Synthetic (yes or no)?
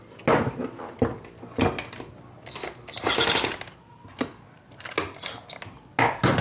no